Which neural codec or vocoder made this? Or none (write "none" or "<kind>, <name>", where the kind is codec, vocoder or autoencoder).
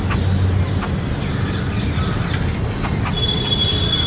none